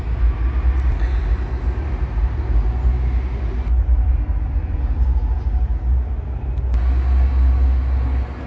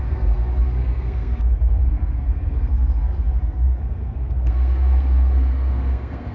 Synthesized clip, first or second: second